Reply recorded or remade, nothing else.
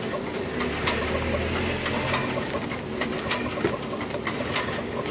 recorded